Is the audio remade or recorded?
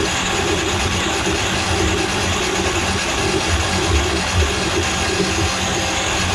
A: recorded